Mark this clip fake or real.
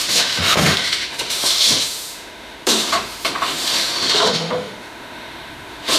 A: fake